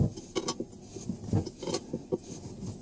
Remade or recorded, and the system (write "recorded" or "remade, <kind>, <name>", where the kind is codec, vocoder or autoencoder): recorded